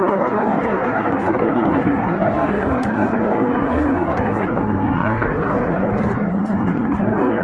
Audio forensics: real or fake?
fake